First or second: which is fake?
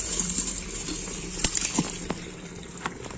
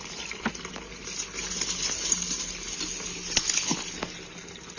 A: first